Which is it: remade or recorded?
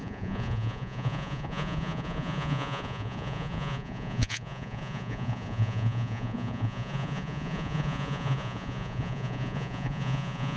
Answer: remade